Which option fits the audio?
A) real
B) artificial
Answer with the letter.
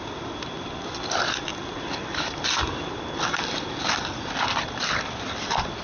A